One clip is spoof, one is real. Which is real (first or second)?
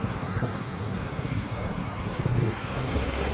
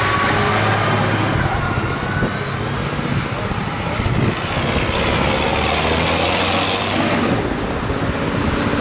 second